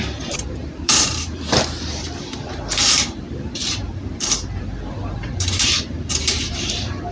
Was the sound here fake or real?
fake